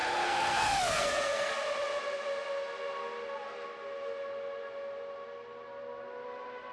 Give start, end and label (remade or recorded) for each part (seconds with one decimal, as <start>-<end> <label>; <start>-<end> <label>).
0.0-1.5 remade; 1.5-6.7 recorded